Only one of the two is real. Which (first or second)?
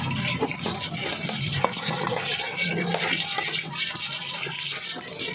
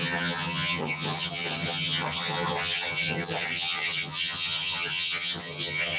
first